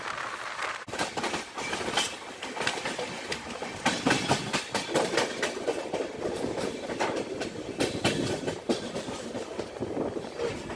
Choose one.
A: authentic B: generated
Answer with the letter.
A